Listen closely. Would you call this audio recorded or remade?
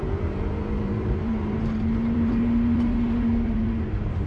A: remade